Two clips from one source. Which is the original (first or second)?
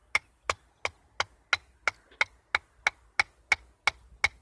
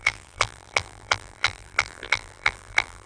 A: first